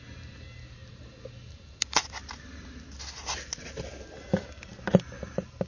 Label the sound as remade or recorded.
recorded